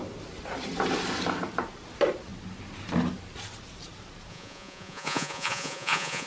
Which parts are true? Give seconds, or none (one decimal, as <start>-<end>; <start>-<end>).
0.0-4.3